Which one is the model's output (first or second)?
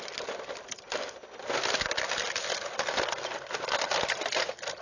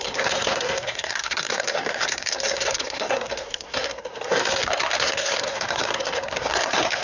second